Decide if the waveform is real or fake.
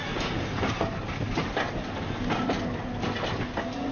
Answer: real